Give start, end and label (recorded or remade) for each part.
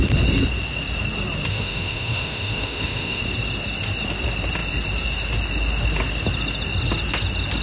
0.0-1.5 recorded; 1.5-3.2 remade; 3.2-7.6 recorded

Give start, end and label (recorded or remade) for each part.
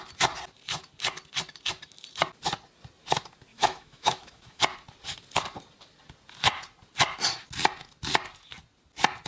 0.0-3.5 recorded; 3.5-4.6 remade; 4.6-9.3 recorded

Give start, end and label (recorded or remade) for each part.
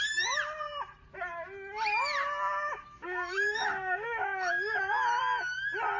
0.0-2.7 recorded; 2.7-5.2 remade; 5.2-6.0 recorded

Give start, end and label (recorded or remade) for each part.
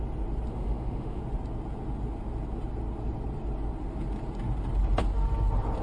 0.0-0.5 recorded; 0.5-1.2 remade; 1.2-5.8 recorded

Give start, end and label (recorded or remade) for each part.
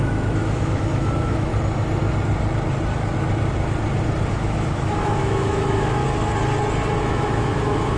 0.0-1.5 remade; 1.5-4.3 recorded; 4.3-6.0 remade; 6.0-7.0 recorded; 7.0-8.0 remade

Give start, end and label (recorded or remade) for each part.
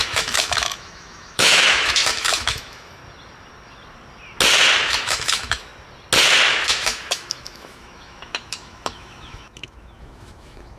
0.0-3.0 remade; 3.0-4.8 recorded; 4.8-5.7 remade; 5.7-6.5 recorded; 6.5-10.8 remade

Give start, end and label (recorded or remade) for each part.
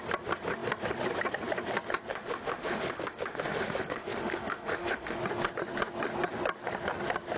0.0-2.1 recorded; 2.1-5.2 remade; 5.2-7.4 recorded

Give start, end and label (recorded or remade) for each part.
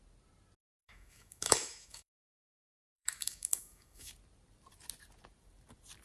0.0-0.6 recorded; 0.6-4.1 remade; 4.1-6.0 recorded